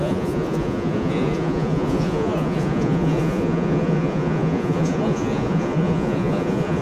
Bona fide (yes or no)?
no